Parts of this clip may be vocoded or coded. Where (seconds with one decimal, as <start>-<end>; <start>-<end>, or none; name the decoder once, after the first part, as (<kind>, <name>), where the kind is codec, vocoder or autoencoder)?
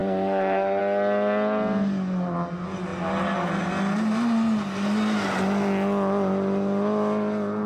0.0-0.8 (codec, SNAC)